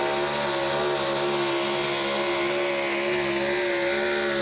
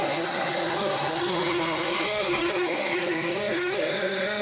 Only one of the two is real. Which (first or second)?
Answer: first